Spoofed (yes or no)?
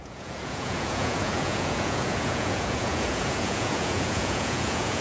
yes